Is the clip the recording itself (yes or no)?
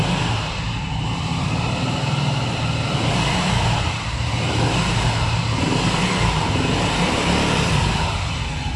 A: yes